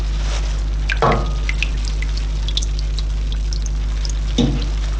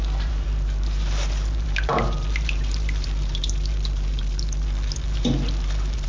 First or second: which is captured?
first